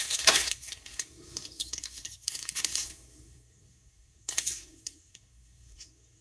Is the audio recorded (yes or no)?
no